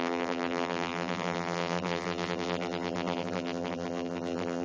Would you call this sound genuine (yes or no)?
no